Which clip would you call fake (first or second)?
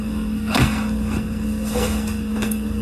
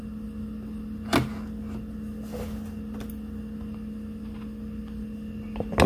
first